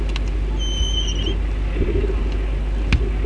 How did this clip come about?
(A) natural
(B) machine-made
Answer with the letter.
A